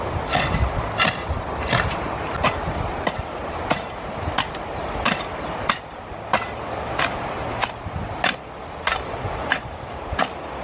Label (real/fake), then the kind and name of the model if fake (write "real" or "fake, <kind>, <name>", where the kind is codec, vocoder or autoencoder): real